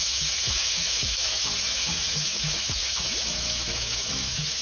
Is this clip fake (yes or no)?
yes